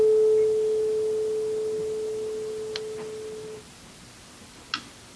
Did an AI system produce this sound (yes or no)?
no